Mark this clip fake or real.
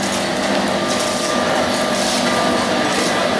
real